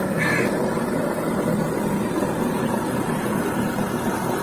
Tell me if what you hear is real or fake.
fake